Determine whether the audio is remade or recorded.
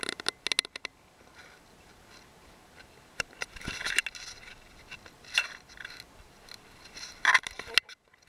recorded